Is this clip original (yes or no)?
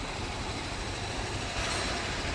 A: yes